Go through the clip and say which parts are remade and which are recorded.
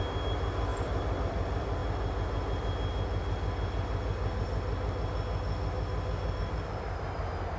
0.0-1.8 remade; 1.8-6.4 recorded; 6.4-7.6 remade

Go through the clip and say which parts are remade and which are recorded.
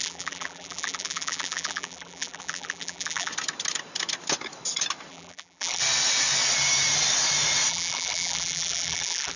0.0-3.3 remade; 3.3-5.1 recorded; 5.1-5.8 remade; 5.8-7.7 recorded; 7.7-9.4 remade